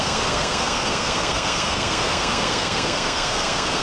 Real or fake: fake